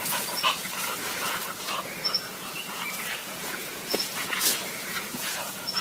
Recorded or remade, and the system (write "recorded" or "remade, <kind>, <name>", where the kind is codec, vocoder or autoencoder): remade, vocoder, Vocos